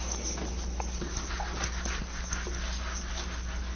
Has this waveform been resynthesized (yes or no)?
no